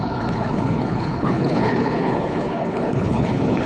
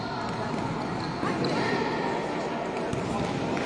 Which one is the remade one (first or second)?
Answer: first